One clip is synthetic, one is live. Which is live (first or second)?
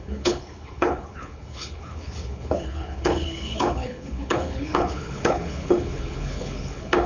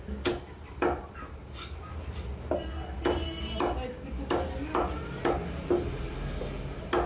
second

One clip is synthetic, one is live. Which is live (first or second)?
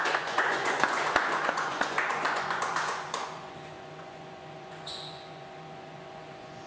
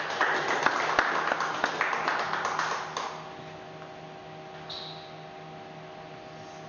second